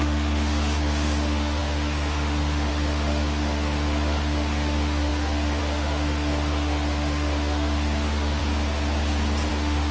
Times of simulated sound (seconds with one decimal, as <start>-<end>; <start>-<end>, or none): 0.0-8.4; 9.5-9.9